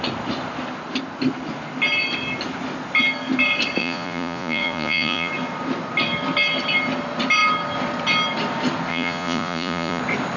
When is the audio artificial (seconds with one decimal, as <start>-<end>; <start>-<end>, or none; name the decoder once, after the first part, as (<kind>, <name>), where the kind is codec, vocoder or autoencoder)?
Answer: 3.8-5.3 (vocoder, Vocos); 8.9-10.0